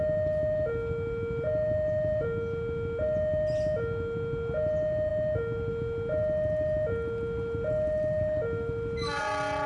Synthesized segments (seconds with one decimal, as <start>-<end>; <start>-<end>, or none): none